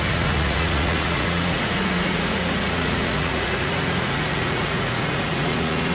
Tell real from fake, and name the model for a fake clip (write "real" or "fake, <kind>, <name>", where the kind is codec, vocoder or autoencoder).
fake, vocoder, Vocos